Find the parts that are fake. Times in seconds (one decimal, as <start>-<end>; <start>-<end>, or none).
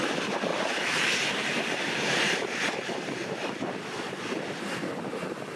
0.5-3.0